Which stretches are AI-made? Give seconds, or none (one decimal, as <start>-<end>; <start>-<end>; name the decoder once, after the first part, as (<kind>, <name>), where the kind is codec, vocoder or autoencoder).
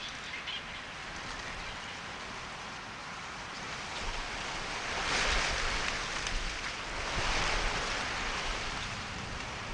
3.0-3.7 (vocoder, BigVGAN v2)